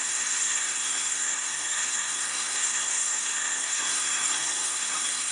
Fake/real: fake